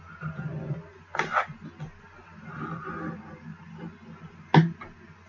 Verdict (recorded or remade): recorded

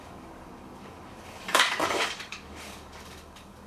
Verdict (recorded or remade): remade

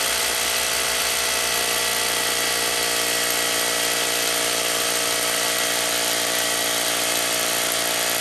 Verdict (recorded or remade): recorded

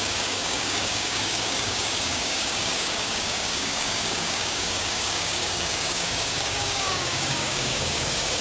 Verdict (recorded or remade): remade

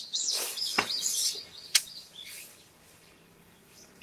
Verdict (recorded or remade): remade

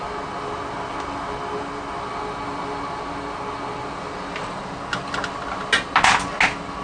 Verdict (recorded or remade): recorded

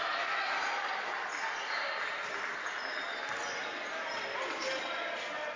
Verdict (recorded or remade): recorded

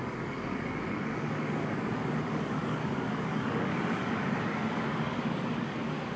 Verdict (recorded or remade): remade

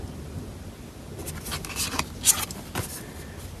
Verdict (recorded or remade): recorded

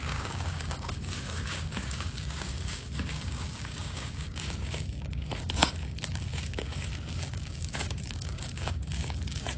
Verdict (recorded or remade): remade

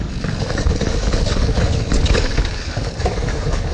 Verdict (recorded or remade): remade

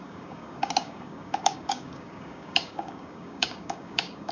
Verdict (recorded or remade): remade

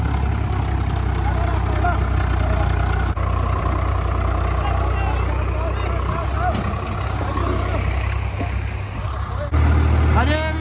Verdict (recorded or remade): recorded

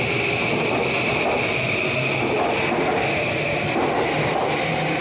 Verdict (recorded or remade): recorded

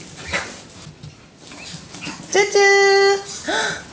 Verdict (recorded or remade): recorded